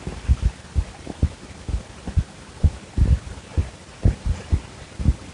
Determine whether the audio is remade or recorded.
recorded